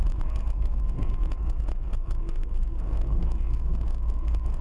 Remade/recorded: remade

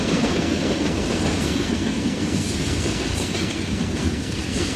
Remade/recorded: remade